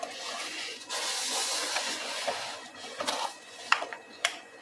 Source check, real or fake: fake